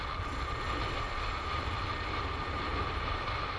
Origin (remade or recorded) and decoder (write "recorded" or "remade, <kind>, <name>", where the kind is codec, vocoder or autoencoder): recorded